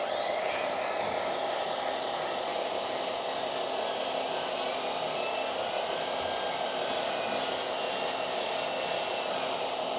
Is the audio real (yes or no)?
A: yes